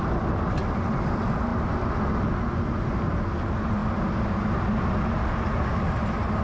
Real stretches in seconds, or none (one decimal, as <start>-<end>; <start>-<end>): 0.0-6.4